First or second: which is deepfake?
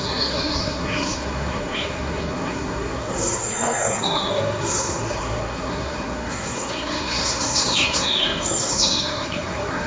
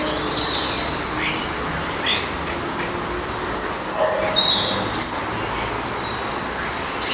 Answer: first